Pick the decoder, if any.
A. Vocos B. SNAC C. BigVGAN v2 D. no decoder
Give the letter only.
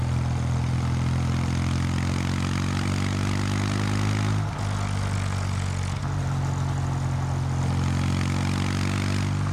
D